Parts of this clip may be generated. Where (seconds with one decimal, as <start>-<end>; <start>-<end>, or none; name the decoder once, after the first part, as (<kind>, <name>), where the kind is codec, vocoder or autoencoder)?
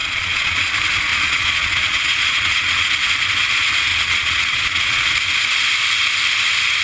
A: 0.0-0.6 (vocoder, Vocos); 1.1-2.9; 3.9-5.1